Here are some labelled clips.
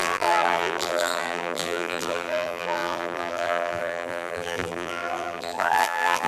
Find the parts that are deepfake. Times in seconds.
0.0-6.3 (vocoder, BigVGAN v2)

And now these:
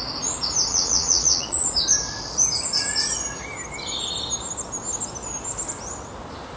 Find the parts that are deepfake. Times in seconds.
0.7-1.8 (vocoder, Vocos)

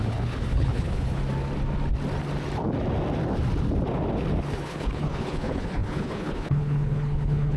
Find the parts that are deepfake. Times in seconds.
0.0-1.2 (codec, HILCodec); 4.5-7.6

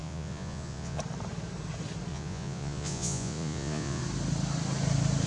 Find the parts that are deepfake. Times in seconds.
0.0-1.0 (vocoder, Vocos); 2.1-4.0

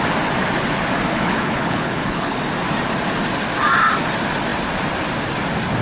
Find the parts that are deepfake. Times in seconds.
1.1-2.4 (codec, HILCodec)

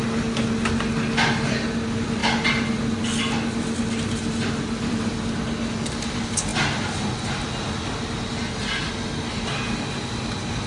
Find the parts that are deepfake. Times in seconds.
none

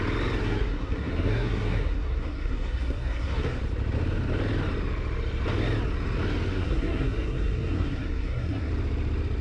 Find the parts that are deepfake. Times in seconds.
0.4-3.6 (codec, SNAC); 6.5-8.7